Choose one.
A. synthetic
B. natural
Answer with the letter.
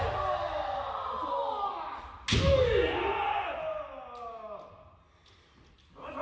B